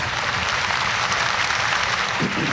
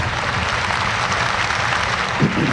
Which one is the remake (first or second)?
first